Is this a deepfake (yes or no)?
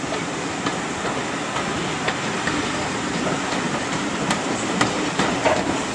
no